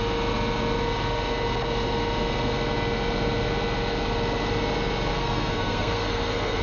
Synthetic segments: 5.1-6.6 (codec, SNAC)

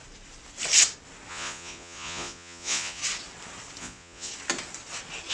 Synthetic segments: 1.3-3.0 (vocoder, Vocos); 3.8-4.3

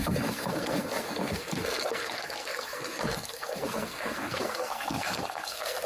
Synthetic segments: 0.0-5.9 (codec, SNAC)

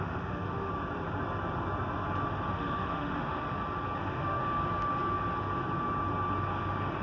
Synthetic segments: 0.0-0.7 (autoencoder, DAC-VAE); 2.5-3.4; 4.0-4.4